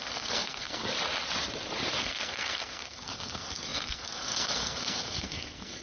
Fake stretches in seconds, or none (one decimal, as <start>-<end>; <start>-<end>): 0.0-0.8; 2.0-5.8